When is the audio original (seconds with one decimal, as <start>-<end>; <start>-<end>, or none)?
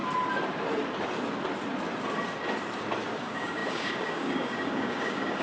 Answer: 0.0-3.2